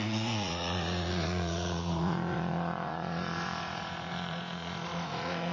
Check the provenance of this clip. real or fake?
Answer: fake